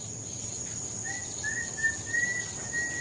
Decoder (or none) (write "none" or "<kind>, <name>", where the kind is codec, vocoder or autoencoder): none